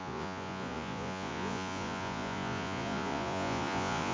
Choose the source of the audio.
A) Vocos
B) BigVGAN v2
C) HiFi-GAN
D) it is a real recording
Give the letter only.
A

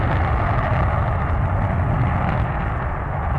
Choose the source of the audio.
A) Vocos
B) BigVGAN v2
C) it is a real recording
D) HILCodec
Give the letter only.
C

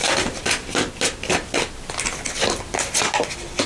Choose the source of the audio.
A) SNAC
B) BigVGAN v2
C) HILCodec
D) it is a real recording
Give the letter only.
D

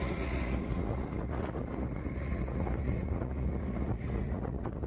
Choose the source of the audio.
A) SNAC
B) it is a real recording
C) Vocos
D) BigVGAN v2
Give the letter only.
C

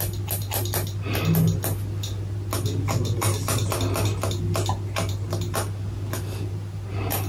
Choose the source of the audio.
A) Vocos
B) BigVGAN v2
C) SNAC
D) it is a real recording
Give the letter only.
D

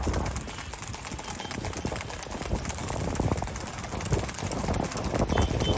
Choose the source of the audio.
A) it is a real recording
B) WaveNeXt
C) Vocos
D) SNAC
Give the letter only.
A